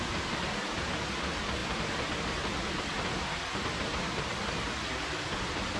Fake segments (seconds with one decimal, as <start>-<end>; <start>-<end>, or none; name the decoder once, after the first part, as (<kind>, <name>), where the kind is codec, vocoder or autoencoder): 1.6-4.7 (vocoder, BigVGAN v2)